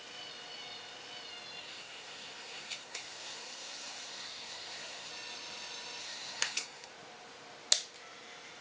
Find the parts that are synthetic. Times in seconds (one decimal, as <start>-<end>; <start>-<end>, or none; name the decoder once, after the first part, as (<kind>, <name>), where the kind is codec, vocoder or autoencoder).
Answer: 1.6-5.1 (codec, SNAC); 6.0-6.9